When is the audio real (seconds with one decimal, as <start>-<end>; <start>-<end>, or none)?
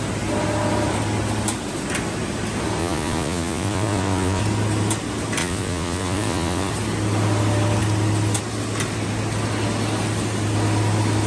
0.0-2.8; 4.4-5.4; 6.7-11.3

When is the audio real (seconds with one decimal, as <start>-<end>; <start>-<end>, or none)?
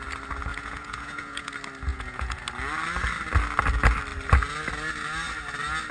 0.0-0.5; 1.5-1.9; 2.4-5.9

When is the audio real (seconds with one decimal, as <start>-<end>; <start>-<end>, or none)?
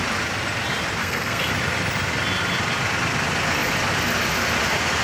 0.0-1.0; 1.5-5.0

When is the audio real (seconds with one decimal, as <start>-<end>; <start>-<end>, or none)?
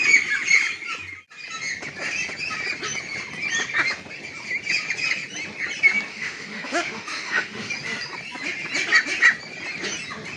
0.0-6.1; 7.7-10.4